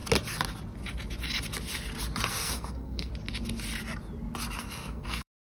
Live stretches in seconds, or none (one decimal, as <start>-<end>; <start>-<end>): 0.0-2.3; 3.1-4.6